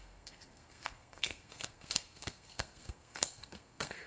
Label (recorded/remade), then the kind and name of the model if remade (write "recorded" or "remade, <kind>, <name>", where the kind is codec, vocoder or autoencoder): remade, codec, SNAC